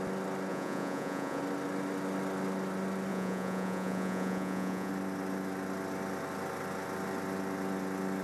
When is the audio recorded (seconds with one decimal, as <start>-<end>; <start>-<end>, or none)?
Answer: 0.0-0.5; 1.4-3.1; 4.9-8.2